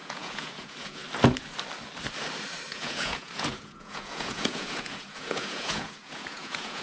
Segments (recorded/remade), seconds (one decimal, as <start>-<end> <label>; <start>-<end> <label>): 0.0-1.0 remade; 1.0-2.7 recorded; 2.7-6.8 remade